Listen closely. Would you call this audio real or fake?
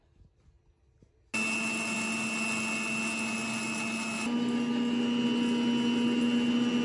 real